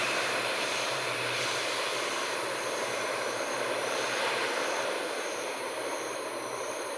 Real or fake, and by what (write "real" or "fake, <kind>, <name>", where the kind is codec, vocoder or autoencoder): fake, vocoder, BigVGAN v2